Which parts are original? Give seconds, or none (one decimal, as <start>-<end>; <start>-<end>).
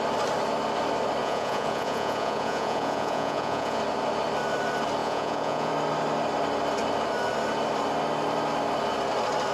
0.0-1.2; 3.8-5.0; 5.7-9.5